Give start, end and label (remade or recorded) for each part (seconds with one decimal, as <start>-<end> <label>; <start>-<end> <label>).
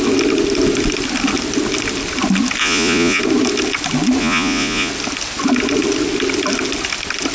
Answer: 0.0-2.6 recorded; 2.6-3.2 remade; 3.2-4.2 recorded; 4.2-4.9 remade; 4.9-7.3 recorded